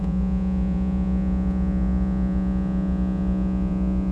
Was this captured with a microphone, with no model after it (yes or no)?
no